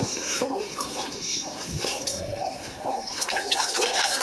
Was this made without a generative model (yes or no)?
no